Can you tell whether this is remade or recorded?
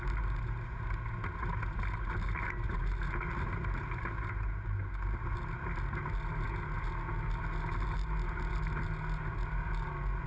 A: recorded